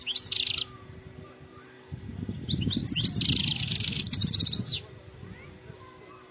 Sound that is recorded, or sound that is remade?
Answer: recorded